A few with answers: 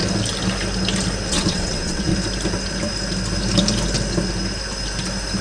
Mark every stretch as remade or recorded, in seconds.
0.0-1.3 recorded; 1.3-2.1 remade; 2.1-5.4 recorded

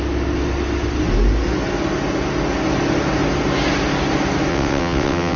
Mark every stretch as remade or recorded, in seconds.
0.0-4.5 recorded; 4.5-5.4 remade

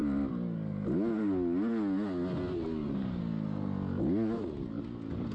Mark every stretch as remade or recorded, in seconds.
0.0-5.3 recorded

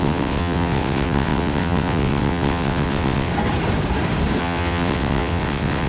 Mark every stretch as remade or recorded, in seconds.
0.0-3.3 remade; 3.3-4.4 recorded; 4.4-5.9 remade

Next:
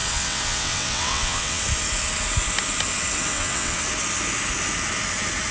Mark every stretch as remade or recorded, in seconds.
0.0-1.6 remade; 1.6-3.3 recorded; 3.3-3.8 remade; 3.8-5.5 recorded